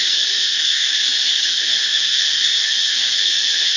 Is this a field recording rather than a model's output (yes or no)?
no